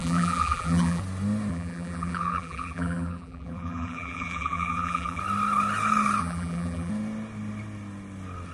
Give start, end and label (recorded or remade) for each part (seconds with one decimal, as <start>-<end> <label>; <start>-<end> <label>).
0.0-1.0 remade; 1.0-1.5 recorded; 1.5-5.2 remade; 5.2-6.2 recorded; 6.2-6.9 remade; 6.9-8.5 recorded